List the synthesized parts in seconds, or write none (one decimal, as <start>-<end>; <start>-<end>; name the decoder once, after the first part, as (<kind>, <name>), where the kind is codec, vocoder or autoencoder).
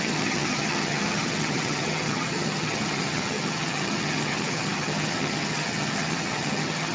0.0-6.9 (vocoder, HiFi-GAN)